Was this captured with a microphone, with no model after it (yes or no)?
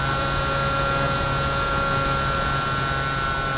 yes